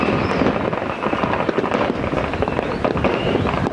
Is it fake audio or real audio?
real